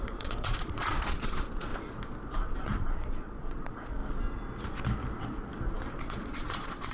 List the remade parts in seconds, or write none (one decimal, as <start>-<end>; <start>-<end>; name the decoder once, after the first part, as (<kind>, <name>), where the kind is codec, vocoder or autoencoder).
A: 0.0-1.7 (vocoder, Vocos); 2.6-4.0; 6.0-6.9